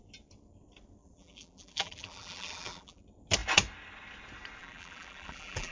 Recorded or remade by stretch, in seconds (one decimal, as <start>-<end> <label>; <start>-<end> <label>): 0.0-1.0 recorded; 1.0-3.0 remade; 3.0-4.6 recorded; 4.6-5.7 remade

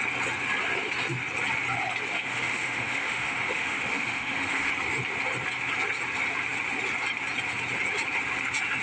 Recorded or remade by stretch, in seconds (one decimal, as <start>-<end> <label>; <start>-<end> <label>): 0.0-2.1 recorded; 2.1-4.7 remade; 4.7-8.8 recorded

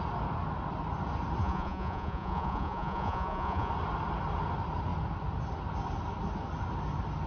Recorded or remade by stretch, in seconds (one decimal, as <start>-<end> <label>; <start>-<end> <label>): 0.0-1.4 recorded; 1.4-3.7 remade; 3.7-7.3 recorded